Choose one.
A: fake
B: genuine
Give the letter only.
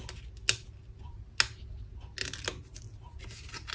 B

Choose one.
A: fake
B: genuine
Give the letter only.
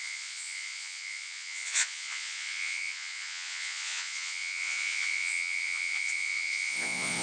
A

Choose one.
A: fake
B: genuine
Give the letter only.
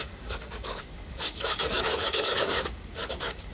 A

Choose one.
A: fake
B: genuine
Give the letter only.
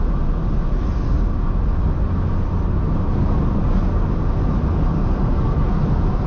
B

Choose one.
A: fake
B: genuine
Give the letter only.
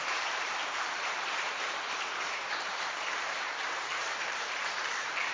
A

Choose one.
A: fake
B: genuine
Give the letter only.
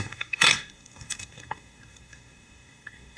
A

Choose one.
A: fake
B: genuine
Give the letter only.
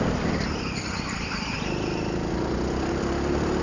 B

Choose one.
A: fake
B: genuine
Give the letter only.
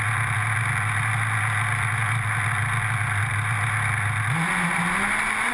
B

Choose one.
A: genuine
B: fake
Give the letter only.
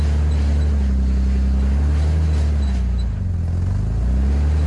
A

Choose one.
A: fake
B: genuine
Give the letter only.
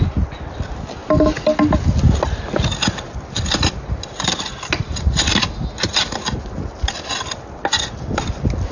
B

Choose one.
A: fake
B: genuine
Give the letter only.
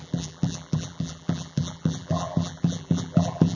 A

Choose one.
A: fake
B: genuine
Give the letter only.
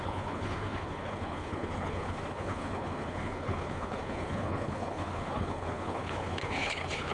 A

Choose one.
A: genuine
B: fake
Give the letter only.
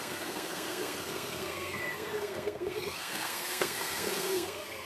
B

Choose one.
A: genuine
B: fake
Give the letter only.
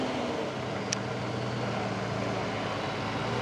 A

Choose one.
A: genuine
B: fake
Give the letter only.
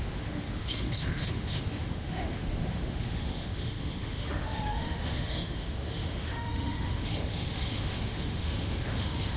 B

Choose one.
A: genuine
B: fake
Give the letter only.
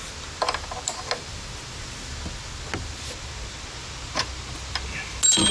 A